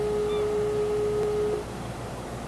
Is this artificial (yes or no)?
no